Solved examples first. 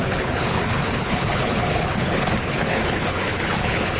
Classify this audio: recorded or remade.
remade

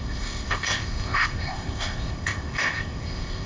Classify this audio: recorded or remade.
remade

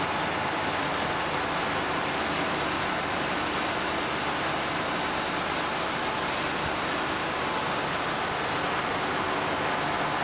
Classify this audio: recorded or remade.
recorded